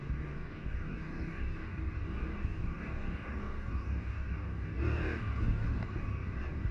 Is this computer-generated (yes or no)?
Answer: yes